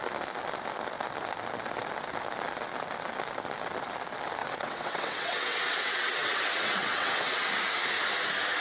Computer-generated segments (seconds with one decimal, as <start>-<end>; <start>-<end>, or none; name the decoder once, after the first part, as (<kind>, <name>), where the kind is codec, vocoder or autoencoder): 4.4-7.5 (vocoder, WaveNeXt)

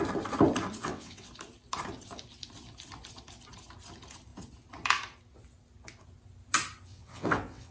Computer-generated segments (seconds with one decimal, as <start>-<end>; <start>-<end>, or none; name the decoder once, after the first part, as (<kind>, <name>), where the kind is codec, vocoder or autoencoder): 0.8-1.3 (vocoder, WaveNeXt); 6.9-7.7